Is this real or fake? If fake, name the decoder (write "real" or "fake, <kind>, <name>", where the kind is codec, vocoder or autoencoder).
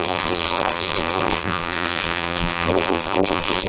fake, vocoder, BigVGAN v2